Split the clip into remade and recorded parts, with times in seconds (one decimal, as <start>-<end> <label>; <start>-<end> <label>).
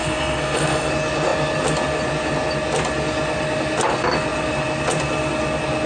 0.0-0.9 remade; 0.9-5.9 recorded